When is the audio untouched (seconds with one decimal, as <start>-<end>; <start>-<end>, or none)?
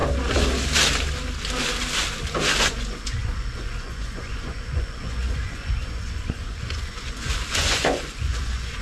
0.0-2.6